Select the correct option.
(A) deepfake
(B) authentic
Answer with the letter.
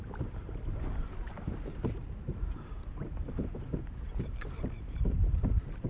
A